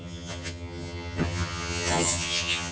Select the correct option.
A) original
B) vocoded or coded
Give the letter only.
B